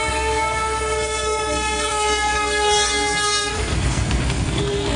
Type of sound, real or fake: fake